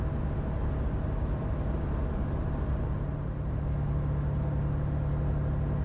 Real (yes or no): yes